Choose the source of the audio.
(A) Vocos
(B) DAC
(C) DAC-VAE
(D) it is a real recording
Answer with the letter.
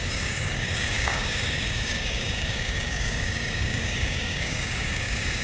B